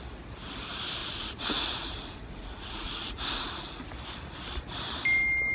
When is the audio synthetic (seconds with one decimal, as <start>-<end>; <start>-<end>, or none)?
1.0-3.8